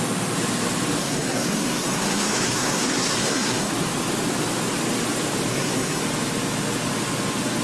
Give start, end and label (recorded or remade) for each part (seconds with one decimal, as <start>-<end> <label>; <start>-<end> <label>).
0.0-1.0 recorded; 1.0-3.7 remade; 3.7-5.5 recorded; 5.5-6.0 remade; 6.0-7.6 recorded